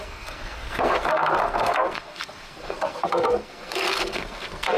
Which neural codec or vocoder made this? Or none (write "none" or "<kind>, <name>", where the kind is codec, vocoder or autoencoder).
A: codec, SNAC